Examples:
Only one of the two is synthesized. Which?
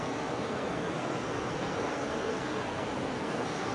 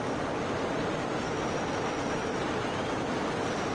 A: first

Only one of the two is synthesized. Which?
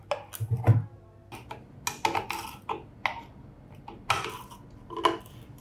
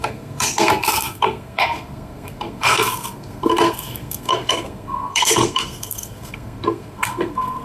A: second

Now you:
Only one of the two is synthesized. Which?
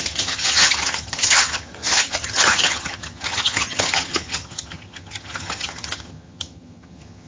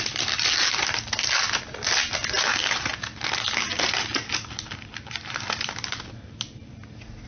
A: first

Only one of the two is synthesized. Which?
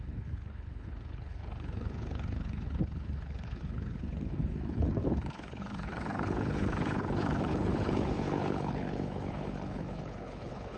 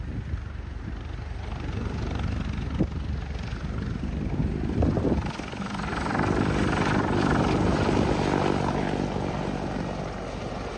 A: first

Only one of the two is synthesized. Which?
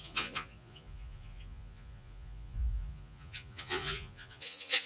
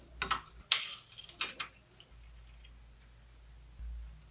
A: first